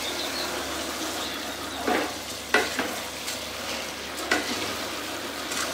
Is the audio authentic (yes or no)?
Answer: yes